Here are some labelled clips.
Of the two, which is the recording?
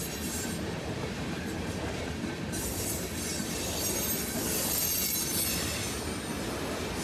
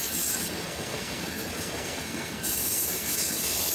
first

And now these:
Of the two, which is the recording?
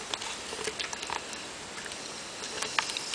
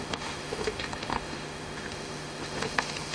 first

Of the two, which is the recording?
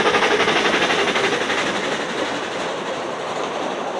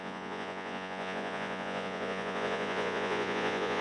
first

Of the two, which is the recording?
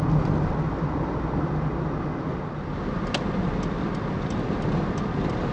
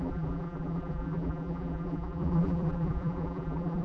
first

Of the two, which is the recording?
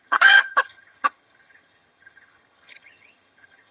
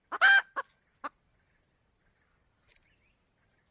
second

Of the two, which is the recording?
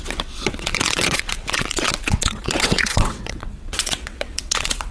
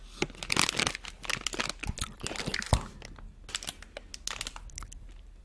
second